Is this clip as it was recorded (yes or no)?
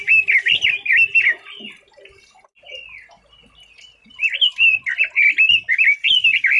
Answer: yes